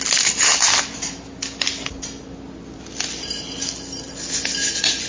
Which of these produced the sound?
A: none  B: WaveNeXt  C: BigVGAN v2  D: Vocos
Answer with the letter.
A